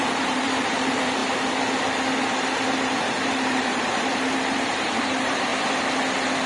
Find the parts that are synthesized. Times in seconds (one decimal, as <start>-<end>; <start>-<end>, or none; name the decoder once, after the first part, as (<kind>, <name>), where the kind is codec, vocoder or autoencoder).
0.0-1.2 (vocoder, BigVGAN v2); 2.2-5.5